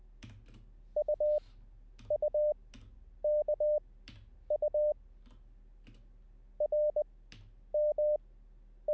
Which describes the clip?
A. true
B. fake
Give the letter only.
A